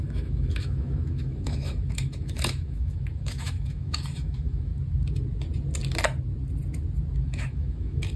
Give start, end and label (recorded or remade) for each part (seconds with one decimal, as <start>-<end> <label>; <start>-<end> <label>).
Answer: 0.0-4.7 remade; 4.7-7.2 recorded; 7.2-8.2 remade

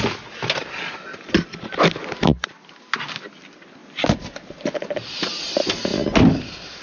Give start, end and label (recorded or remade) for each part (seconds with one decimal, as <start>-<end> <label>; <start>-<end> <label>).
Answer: 0.0-6.8 recorded

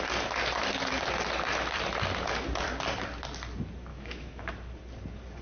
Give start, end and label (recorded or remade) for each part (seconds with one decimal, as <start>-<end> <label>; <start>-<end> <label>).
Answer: 0.0-3.9 recorded; 3.9-4.5 remade; 4.5-5.4 recorded

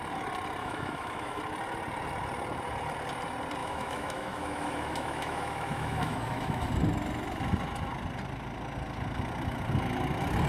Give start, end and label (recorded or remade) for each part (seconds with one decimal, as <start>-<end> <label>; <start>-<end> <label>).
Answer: 0.0-0.6 recorded; 0.6-1.4 remade; 1.4-3.6 recorded; 3.6-6.7 remade; 6.7-10.5 recorded